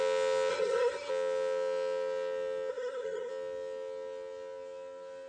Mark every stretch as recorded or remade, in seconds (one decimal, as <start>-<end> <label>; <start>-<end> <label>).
0.0-0.5 recorded; 0.5-1.1 remade; 1.1-2.7 recorded; 2.7-3.3 remade; 3.3-5.3 recorded